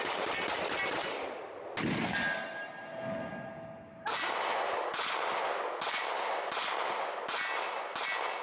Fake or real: real